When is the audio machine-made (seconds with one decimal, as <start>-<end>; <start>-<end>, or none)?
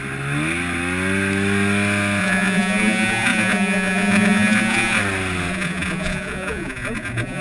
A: 2.2-5.0; 5.5-7.4